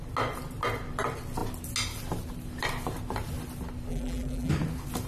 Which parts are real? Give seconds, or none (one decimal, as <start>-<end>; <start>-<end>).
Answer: 0.0-3.9; 4.5-5.1